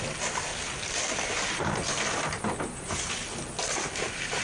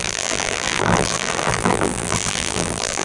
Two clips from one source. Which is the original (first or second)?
first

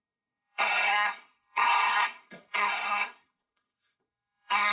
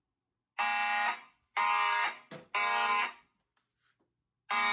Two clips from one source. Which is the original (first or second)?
second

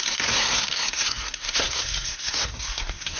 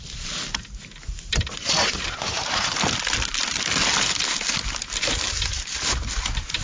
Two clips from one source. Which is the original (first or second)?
second